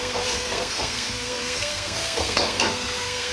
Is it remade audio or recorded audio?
remade